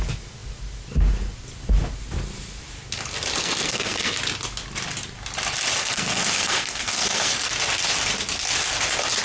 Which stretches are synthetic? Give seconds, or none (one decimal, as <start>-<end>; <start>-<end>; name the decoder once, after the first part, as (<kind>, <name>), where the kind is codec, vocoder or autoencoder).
3.4-4.2 (codec, SNAC); 5.8-7.5

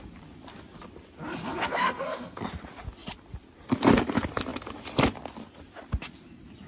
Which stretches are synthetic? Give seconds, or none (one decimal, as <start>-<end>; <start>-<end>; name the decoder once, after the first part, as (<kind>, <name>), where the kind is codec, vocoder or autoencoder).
1.4-2.4 (codec, SNAC)

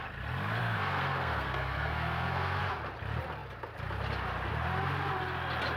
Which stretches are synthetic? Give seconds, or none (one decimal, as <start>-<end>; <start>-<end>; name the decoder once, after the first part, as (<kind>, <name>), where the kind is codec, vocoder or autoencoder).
0.6-2.6 (codec, SNAC)

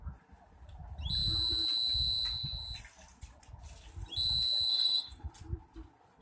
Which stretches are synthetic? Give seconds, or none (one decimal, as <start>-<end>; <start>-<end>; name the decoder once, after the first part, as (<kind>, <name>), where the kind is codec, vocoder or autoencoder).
4.7-5.3 (codec, SNAC)

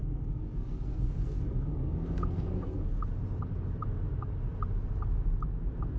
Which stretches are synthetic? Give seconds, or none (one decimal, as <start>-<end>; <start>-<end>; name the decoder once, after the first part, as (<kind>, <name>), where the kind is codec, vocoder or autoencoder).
0.0-3.0 (codec, SNAC)

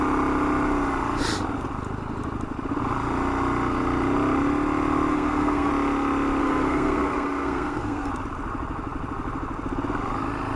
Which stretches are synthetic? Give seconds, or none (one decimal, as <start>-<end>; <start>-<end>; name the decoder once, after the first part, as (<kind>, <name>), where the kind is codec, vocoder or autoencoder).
5.1-5.7 (codec, SNAC); 6.4-8.1

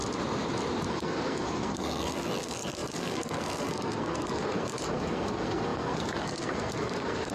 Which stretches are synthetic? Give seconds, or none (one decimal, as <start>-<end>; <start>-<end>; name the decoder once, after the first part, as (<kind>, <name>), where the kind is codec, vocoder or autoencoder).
0.9-7.3 (codec, SNAC)

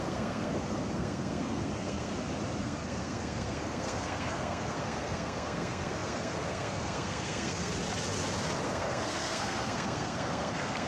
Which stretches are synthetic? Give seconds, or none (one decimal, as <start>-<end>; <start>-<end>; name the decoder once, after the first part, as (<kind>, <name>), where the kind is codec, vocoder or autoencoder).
0.0-2.1 (codec, SNAC); 2.6-7.7; 8.6-10.9